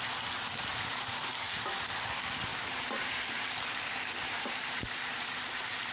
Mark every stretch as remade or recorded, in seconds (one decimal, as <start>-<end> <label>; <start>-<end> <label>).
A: 0.0-0.7 recorded; 0.7-1.3 remade; 1.3-2.5 recorded; 2.5-3.2 remade; 3.2-4.2 recorded; 4.2-5.9 remade